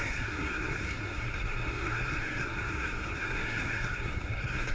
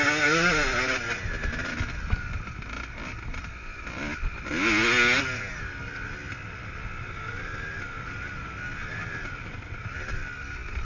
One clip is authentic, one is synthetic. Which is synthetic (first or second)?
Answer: first